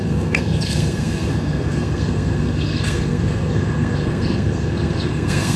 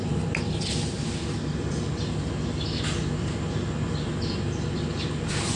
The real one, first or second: second